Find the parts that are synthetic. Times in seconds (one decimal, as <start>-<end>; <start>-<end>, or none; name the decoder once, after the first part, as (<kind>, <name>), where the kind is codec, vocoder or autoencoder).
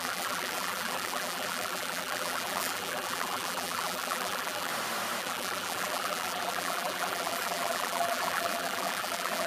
0.0-4.7 (vocoder, BigVGAN v2); 5.2-9.5